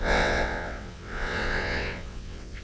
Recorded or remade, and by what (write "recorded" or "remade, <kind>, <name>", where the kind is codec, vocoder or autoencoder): remade, vocoder, WaveNeXt